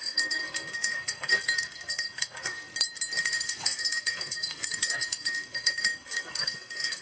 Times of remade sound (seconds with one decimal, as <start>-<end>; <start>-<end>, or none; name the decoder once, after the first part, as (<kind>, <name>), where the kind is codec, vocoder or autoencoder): 0.0-2.7 (codec, SNAC); 3.2-7.0